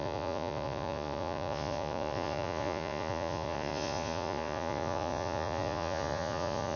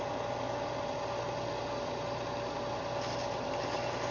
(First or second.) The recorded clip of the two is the second